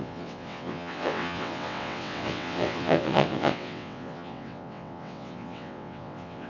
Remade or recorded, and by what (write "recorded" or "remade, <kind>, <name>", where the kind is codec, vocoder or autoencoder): remade, vocoder, WaveNeXt